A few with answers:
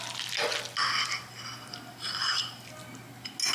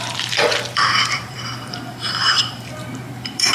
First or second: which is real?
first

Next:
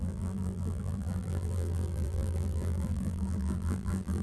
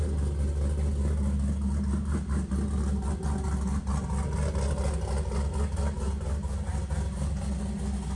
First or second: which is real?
second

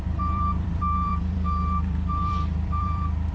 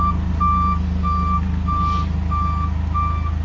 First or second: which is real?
second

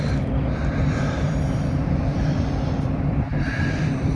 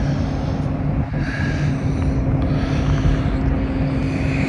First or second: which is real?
second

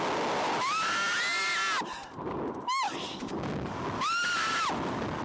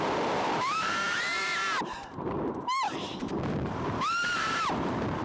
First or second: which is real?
first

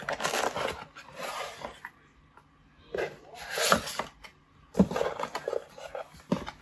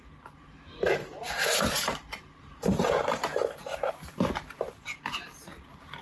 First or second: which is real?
first